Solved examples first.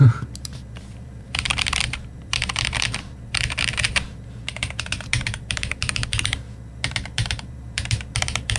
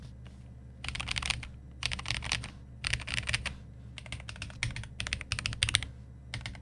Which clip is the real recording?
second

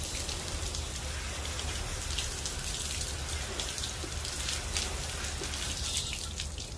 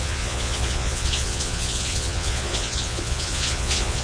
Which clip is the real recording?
first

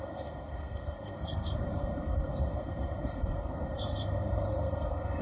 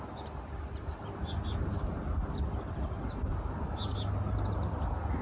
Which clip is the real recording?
second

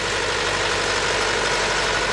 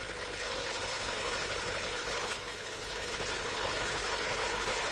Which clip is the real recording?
first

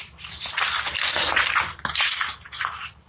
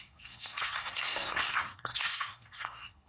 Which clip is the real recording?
first